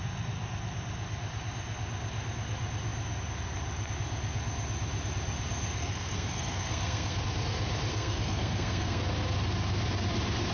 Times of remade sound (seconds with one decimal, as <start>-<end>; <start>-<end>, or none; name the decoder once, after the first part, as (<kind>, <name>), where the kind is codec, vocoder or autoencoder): 5.8-7.2 (codec, SNAC); 7.9-9.0